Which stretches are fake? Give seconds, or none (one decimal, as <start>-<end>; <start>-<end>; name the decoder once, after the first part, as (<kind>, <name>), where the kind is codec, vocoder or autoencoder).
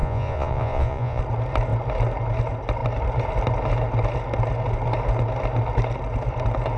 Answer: 0.0-1.2 (vocoder, Vocos)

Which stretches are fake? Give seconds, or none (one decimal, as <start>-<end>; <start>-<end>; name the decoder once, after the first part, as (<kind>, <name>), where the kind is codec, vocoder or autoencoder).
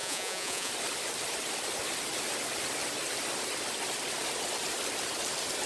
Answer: 0.0-0.7 (vocoder, Vocos)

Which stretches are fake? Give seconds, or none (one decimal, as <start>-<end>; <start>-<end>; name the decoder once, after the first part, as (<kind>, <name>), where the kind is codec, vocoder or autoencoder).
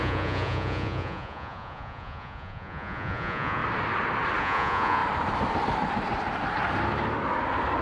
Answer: 0.0-3.6 (vocoder, Vocos); 4.4-5.0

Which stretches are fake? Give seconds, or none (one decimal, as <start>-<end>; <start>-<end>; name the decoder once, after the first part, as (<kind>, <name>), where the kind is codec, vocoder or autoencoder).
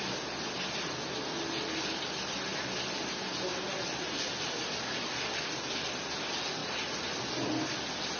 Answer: 6.6-7.2 (vocoder, Vocos)